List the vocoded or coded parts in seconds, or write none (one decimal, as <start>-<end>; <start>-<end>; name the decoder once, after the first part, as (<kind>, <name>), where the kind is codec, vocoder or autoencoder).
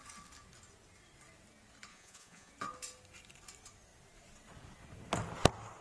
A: 1.9-2.5 (vocoder, Vocos)